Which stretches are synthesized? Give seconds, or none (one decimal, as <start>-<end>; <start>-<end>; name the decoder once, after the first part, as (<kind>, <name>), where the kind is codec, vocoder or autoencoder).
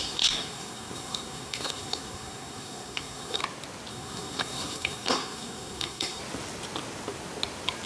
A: 0.0-3.4 (codec, SNAC); 3.9-6.2